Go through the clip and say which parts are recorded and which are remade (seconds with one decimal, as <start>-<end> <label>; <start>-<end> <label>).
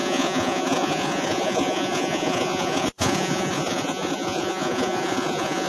0.0-5.7 remade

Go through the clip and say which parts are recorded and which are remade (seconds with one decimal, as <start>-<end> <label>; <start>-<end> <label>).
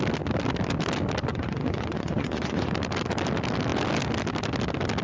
0.0-1.3 recorded; 1.3-2.7 remade; 2.7-5.0 recorded